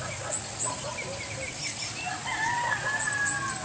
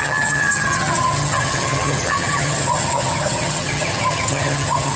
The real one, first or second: first